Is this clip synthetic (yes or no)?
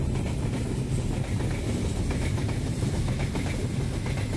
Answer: no